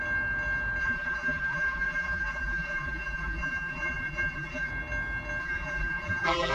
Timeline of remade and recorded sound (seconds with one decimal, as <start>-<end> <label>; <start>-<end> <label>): 0.0-0.8 recorded; 0.8-4.7 remade; 4.7-5.4 recorded; 5.4-6.5 remade